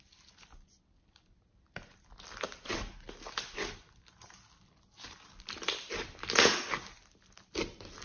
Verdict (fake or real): real